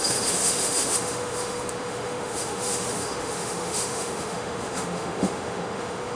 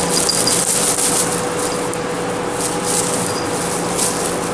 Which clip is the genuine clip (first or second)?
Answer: second